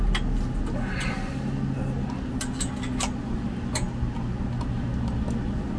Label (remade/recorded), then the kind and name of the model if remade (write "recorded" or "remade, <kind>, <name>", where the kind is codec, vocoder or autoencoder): recorded